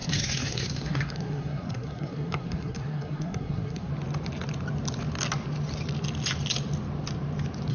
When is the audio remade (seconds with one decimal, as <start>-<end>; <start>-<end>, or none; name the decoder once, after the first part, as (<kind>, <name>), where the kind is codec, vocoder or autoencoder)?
0.0-3.9 (codec, SNAC)